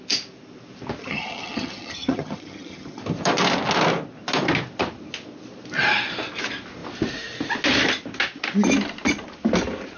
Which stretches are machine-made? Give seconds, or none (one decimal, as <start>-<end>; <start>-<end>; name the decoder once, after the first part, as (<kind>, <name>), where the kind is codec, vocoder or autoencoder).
1.0-3.0 (vocoder, HiFi-GAN)